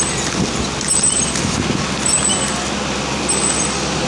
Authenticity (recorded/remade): recorded